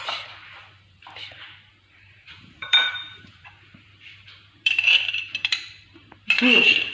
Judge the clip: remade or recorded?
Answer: remade